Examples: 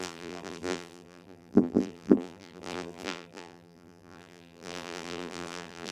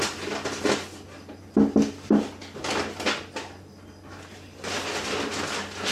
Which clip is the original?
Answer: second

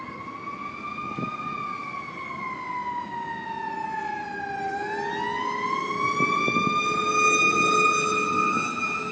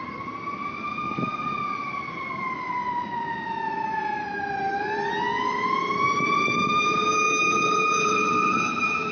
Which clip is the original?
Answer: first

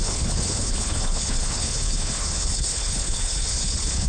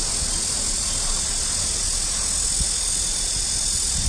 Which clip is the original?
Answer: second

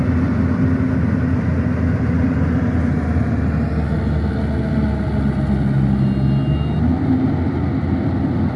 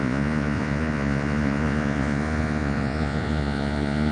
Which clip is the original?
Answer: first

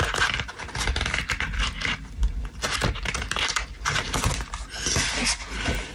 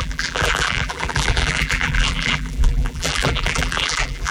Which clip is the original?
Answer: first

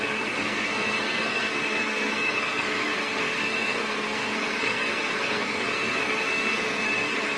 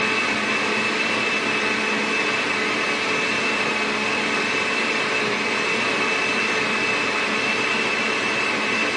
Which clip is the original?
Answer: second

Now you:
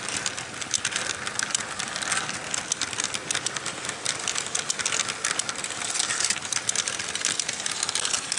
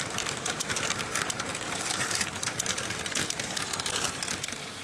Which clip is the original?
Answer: first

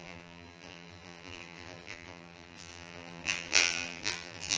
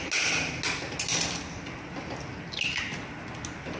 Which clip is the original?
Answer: second